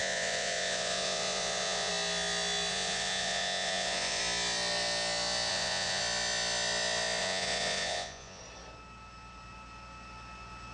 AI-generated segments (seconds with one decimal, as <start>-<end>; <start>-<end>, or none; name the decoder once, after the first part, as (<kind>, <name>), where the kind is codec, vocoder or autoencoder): 0.0-1.9 (vocoder, Vocos); 2.7-4.2; 5.5-6.0; 7.2-8.4